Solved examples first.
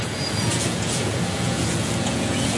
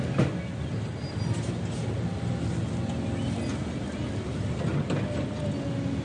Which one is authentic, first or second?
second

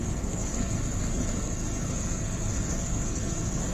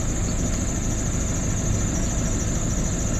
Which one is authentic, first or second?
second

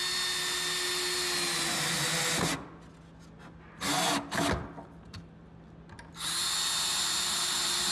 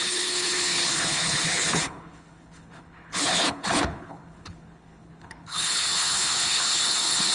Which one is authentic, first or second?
first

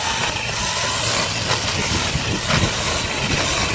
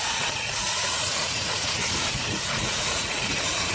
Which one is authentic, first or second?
first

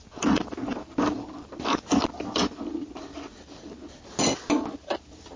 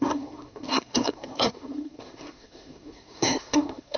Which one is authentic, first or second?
first